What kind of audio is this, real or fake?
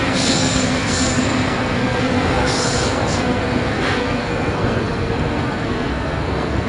fake